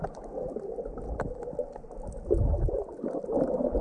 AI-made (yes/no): no